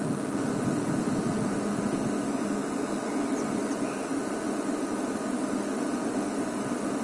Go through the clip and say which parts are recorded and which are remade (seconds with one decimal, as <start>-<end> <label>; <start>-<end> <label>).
0.0-7.0 recorded